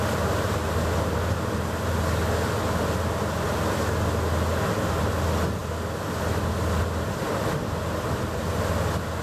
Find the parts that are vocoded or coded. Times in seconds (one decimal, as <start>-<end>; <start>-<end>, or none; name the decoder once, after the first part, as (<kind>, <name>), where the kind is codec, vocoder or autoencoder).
5.6-9.2 (vocoder, BigVGAN v2)